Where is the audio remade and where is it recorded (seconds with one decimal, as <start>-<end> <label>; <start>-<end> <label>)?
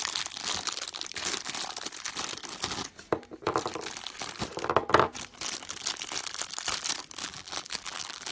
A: 0.0-7.2 recorded; 7.2-8.3 remade